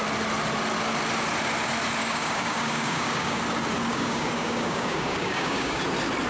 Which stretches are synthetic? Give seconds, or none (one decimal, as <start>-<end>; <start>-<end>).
2.0-3.4; 3.9-5.8

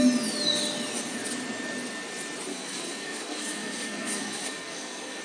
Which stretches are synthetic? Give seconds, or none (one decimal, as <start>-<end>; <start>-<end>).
2.5-5.2

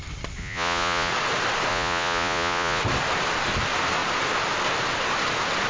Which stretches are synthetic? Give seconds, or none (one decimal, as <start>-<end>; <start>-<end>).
0.4-1.1; 1.7-2.8

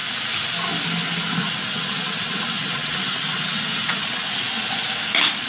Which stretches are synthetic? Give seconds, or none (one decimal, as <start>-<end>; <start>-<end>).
1.4-4.7

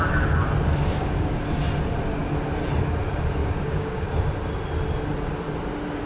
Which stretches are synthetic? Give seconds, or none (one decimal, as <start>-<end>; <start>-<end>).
0.8-1.4; 3.4-4.2